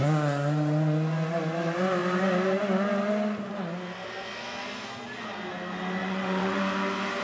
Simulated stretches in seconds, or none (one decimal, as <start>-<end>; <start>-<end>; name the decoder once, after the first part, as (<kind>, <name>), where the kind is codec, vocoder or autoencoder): 6.0-6.6 (vocoder, WaveNeXt)